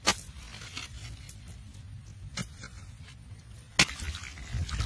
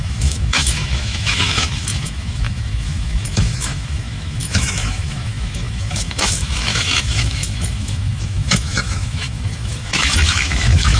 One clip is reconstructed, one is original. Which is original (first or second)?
first